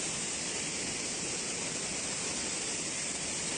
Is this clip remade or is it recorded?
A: remade